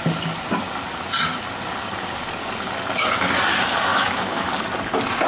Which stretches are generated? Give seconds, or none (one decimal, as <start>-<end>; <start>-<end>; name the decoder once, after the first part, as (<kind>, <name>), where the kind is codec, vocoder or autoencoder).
3.9-4.5 (autoencoder, DAC-VAE)